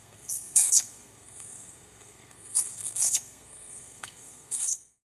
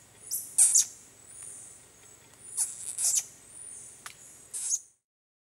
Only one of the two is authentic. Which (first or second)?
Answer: second